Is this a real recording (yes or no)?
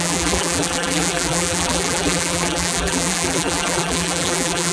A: no